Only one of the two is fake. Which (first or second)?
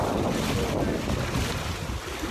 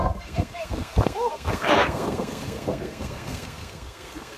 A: second